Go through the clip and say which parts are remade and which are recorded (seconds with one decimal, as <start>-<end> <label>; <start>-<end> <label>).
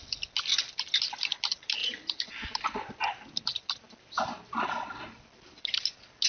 0.0-6.3 recorded